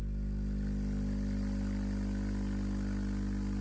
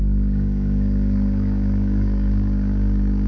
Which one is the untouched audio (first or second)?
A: first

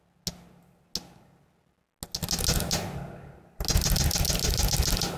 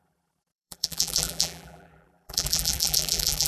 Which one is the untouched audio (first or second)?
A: first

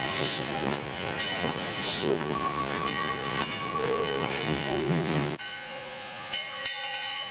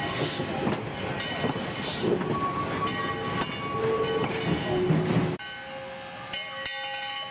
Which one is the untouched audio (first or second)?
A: second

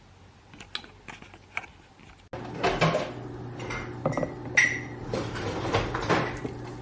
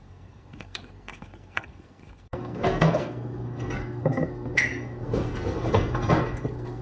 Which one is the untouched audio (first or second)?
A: first